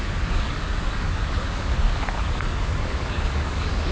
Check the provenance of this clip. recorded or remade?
remade